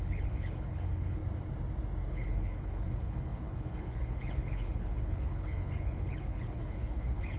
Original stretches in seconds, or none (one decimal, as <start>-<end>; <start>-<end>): 1.2-2.1